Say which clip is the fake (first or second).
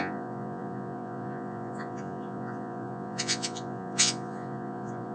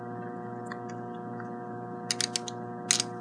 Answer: first